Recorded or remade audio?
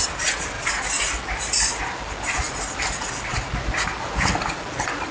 recorded